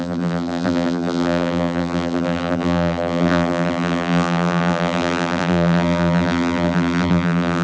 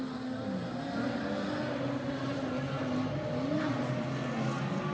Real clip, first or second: second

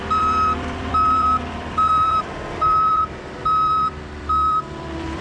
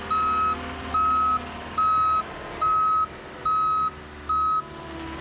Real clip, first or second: second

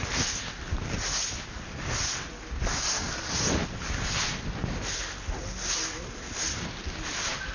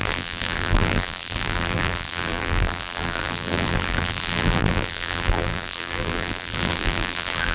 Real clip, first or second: first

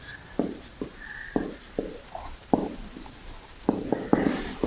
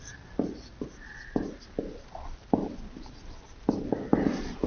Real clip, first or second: second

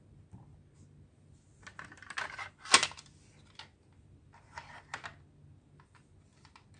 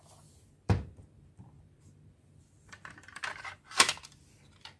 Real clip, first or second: first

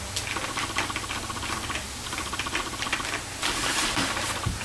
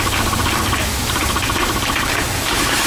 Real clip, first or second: first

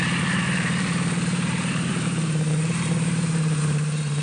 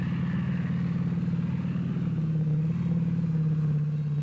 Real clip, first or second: second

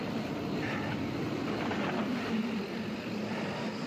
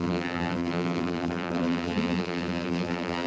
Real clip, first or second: first